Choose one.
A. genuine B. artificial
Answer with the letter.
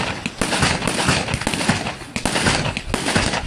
A